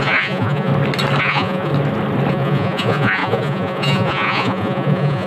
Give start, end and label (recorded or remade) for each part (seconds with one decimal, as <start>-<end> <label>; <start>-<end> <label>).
0.0-0.7 remade; 0.7-1.2 recorded; 1.2-1.7 remade; 1.7-2.3 recorded; 2.3-5.3 remade